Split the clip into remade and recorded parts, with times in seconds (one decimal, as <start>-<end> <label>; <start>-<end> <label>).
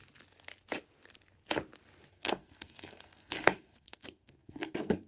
0.0-2.1 recorded; 2.1-5.1 remade